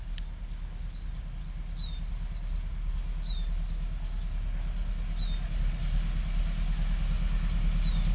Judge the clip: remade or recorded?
recorded